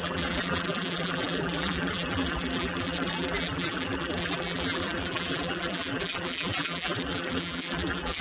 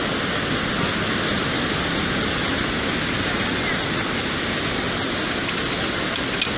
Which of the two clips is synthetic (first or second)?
first